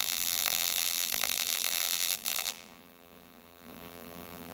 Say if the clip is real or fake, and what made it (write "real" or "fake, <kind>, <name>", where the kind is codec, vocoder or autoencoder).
fake, vocoder, BigVGAN v2